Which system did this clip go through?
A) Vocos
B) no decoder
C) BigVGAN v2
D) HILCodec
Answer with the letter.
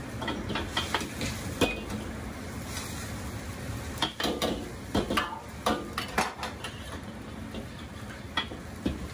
B